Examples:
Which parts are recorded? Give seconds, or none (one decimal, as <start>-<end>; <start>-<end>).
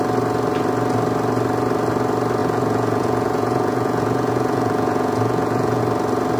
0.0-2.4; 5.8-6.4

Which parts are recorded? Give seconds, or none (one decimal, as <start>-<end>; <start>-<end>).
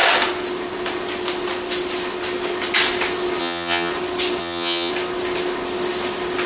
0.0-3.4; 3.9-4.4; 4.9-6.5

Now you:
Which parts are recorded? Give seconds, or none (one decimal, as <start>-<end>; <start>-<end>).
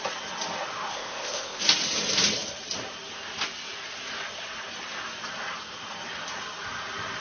0.0-0.9; 1.6-7.2